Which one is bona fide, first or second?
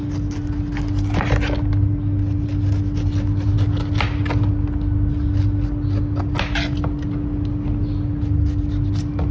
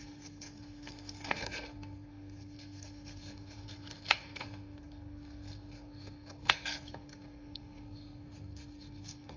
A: first